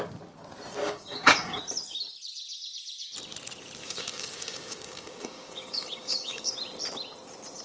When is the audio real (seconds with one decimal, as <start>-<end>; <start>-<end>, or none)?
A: 0.0-0.8; 1.6-3.8; 6.5-7.6